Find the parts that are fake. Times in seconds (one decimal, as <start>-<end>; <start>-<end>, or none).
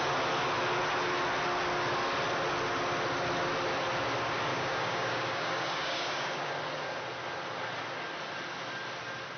4.5-6.5